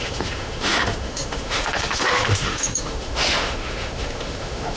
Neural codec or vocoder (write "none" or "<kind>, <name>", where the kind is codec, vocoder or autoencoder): autoencoder, DAC-VAE